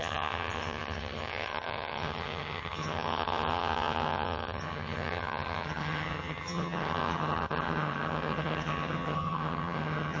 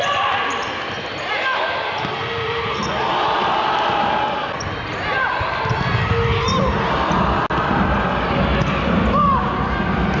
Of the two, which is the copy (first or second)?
first